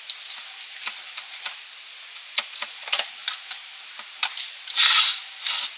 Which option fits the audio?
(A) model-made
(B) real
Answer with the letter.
B